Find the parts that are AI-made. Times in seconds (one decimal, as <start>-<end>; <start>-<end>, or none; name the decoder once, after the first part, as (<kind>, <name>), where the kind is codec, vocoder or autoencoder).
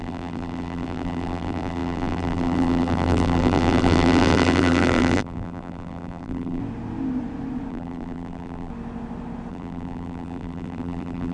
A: 0.0-6.6 (vocoder, BigVGAN v2); 7.7-8.7; 9.5-11.3